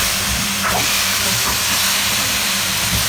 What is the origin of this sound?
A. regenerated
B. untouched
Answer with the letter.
A